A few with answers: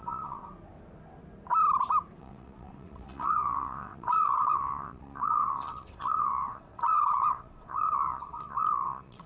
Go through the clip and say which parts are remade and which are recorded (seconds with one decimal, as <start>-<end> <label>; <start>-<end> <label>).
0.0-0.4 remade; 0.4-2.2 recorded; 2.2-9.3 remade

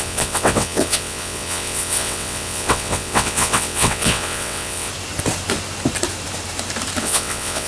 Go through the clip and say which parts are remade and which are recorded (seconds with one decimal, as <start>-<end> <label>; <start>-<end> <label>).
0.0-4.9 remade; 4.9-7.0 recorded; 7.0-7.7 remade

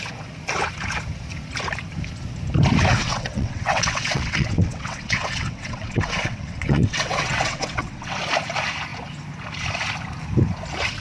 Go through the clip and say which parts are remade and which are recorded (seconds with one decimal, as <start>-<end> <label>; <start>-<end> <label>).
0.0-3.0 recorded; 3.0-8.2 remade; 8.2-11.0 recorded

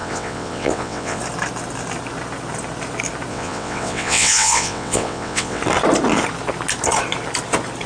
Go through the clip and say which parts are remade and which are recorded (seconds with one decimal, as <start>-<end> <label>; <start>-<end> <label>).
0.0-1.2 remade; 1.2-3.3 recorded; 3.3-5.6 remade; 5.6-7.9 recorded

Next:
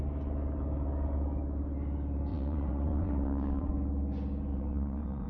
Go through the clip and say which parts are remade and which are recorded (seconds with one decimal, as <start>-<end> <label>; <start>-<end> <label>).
0.0-2.3 recorded; 2.3-3.7 remade; 3.7-4.5 recorded; 4.5-5.3 remade

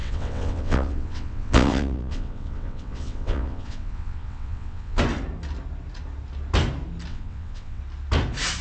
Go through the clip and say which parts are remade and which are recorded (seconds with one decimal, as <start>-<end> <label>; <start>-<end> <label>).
0.0-5.0 remade; 5.0-7.1 recorded; 7.1-7.8 remade; 7.8-8.6 recorded

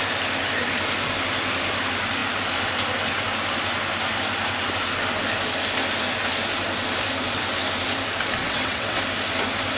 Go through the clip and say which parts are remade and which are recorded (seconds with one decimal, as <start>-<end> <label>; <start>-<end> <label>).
0.0-8.4 recorded; 8.4-9.0 remade; 9.0-9.8 recorded

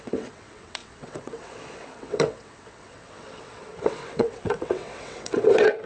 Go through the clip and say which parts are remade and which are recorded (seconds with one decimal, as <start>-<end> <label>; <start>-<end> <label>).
0.0-5.9 remade